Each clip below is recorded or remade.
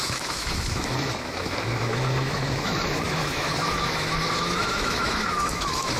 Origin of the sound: remade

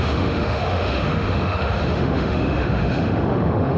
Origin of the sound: remade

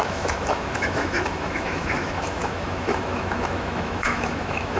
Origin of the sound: remade